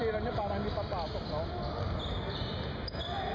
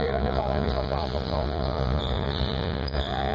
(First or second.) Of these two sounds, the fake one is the second